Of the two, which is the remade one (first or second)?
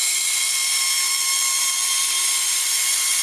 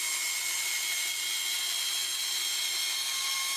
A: first